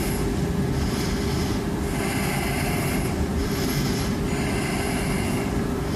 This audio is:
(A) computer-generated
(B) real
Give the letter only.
A